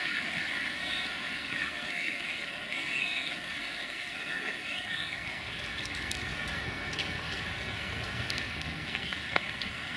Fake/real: fake